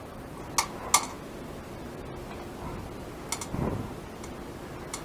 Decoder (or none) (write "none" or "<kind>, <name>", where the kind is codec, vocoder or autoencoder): none